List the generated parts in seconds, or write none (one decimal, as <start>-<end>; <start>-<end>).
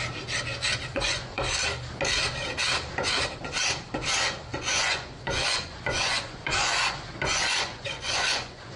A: 0.9-1.4; 4.5-8.8